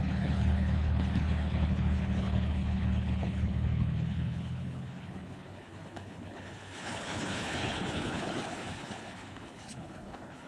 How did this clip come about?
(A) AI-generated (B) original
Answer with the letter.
A